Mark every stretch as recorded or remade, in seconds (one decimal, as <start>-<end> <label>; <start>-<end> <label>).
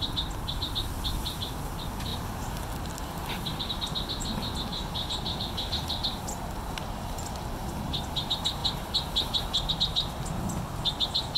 0.0-2.1 recorded; 2.1-3.7 remade; 3.7-4.7 recorded; 4.7-5.2 remade; 5.2-11.4 recorded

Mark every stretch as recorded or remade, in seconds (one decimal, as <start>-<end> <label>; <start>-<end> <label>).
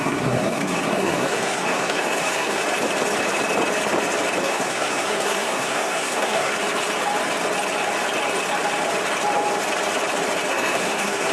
0.0-2.6 remade; 2.6-4.4 recorded; 4.4-6.5 remade; 6.5-10.5 recorded; 10.5-11.3 remade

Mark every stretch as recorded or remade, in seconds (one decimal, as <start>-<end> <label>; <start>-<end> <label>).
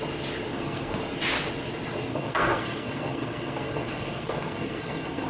0.0-0.5 recorded; 0.5-1.0 remade; 1.0-2.1 recorded; 2.1-5.3 remade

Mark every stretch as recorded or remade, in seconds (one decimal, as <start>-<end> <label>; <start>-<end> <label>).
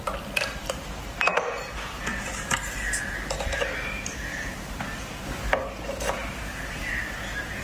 0.0-6.2 recorded; 6.2-6.9 remade; 6.9-7.6 recorded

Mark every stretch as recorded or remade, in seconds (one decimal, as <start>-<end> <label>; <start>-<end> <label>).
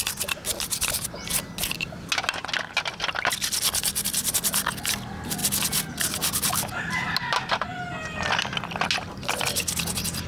0.0-10.3 recorded